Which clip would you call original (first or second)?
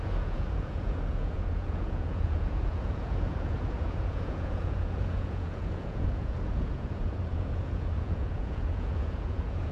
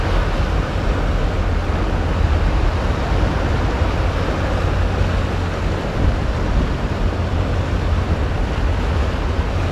second